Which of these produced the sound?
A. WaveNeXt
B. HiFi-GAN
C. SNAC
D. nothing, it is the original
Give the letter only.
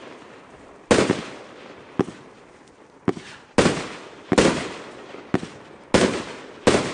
D